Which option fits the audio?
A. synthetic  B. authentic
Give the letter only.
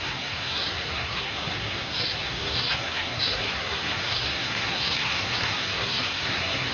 A